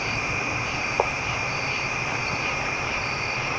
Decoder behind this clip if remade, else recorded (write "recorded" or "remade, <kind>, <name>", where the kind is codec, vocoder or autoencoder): remade, vocoder, BigVGAN v2